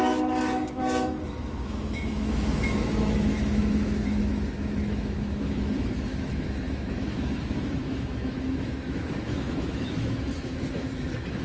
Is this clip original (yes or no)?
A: no